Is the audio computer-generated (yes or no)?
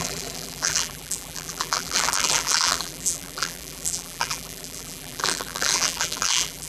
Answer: yes